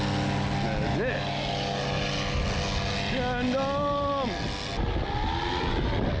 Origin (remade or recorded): recorded